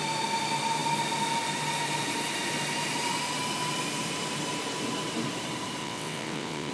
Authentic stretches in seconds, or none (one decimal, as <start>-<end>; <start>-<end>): 0.0-5.8